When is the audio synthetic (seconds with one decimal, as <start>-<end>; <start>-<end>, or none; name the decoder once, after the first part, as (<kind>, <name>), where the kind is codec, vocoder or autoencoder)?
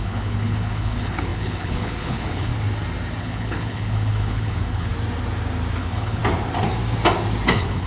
0.0-2.5 (codec, HILCodec); 3.2-4.9; 5.8-6.2; 7.5-7.9